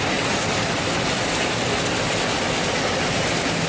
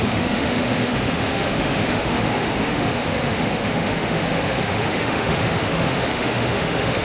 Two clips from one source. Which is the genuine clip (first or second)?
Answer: first